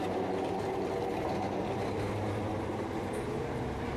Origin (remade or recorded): recorded